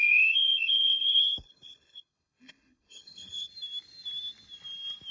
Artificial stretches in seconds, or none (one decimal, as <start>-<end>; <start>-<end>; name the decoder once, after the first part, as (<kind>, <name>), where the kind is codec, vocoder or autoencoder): 0.0-3.5 (codec, HILCodec)